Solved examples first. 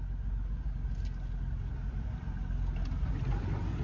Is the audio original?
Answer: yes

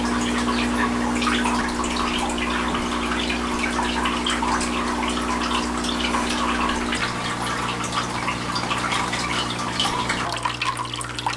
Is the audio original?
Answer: yes